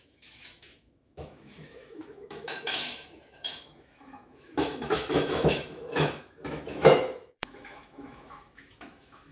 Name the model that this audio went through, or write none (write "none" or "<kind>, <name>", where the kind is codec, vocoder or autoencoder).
autoencoder, DAC-VAE